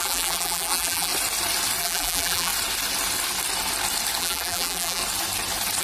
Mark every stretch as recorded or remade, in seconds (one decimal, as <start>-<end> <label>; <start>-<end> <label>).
0.0-1.1 remade; 1.1-1.8 recorded; 1.8-2.5 remade; 2.5-4.2 recorded; 4.2-5.0 remade; 5.0-5.8 recorded